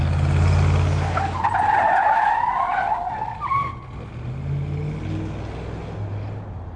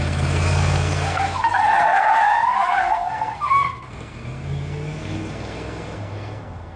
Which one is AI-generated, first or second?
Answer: second